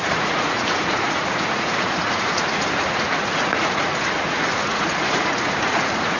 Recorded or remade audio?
remade